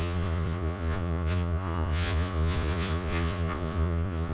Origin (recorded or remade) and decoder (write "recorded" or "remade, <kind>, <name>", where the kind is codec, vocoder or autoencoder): remade, vocoder, Vocos